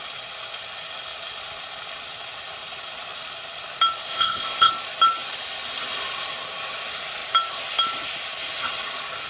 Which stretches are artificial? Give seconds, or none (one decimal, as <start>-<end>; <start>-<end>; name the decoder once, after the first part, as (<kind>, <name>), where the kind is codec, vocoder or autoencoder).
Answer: 4.1-4.7 (codec, ZipCodec)